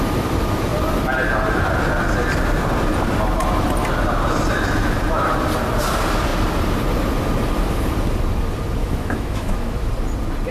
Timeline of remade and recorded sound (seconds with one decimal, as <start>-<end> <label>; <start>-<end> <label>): 0.0-8.8 recorded; 8.8-9.9 remade; 9.9-10.5 recorded